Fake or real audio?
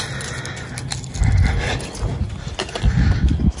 real